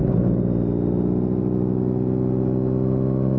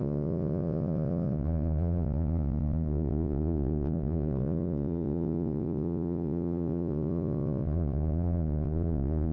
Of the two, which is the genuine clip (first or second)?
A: first